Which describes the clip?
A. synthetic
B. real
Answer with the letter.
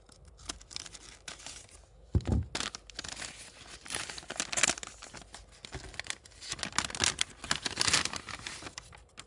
B